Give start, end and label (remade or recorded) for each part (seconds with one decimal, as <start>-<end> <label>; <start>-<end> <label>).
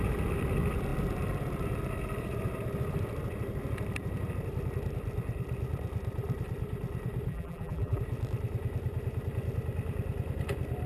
0.0-7.3 recorded; 7.3-8.0 remade; 8.0-10.9 recorded